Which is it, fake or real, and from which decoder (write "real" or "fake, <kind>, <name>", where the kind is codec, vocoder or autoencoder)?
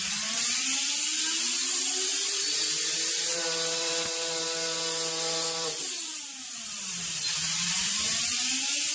fake, vocoder, BigVGAN v2